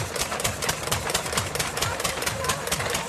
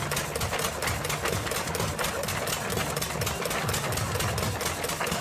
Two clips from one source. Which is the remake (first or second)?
first